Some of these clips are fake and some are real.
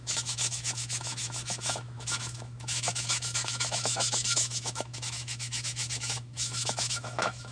fake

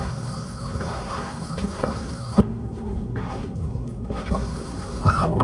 fake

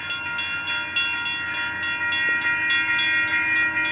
real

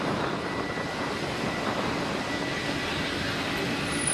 real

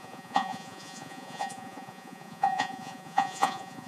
fake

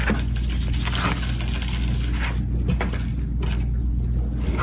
real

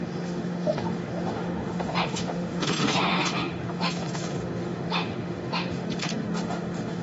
fake